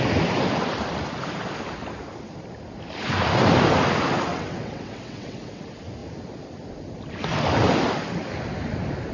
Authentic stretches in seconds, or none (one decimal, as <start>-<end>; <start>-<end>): 0.0-4.3; 5.6-9.1